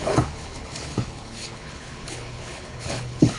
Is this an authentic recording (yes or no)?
no